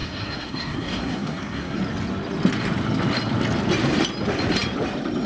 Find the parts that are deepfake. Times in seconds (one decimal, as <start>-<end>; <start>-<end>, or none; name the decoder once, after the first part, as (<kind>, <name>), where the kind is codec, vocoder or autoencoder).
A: 0.0-1.8 (codec, SNAC)